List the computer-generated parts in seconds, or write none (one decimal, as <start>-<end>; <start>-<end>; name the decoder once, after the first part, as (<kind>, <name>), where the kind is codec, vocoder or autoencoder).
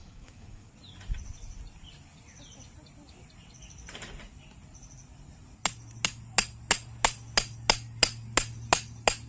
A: 0.0-0.7 (autoencoder, DAC-VAE)